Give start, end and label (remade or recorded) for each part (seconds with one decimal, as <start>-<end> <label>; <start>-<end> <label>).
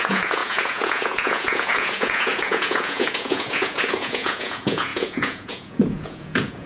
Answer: 0.0-6.7 remade